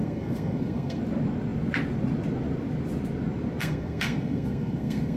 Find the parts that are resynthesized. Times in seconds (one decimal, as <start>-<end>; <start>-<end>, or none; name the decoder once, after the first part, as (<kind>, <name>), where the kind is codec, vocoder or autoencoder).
0.0-1.0 (codec, SNAC); 3.6-5.2